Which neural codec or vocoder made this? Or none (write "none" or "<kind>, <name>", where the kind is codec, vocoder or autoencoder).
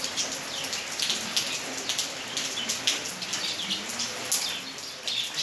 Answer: none